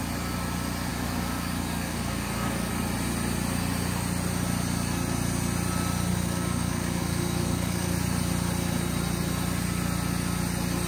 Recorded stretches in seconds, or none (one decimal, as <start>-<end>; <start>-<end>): 0.0-0.9; 2.7-6.1; 7.9-10.9